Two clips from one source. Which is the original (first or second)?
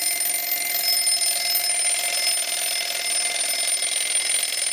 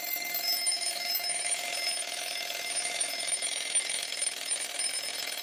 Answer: first